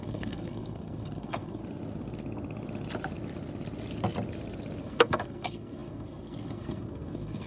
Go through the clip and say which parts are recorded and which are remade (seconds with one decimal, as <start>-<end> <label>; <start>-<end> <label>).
0.0-1.6 remade; 1.6-4.8 recorded; 4.8-7.5 remade